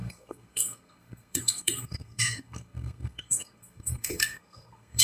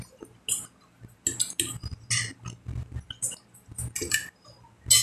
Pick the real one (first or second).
second